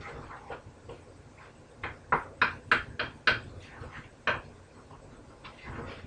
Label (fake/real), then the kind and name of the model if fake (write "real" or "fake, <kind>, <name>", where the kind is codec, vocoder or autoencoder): real